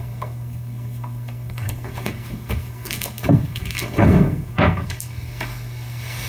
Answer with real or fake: fake